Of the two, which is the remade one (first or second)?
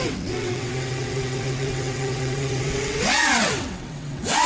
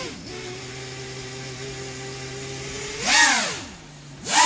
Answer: first